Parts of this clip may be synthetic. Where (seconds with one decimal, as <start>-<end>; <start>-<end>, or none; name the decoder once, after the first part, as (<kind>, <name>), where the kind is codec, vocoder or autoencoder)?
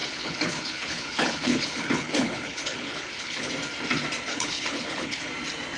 0.0-3.5 (codec, HILCodec); 4.3-5.3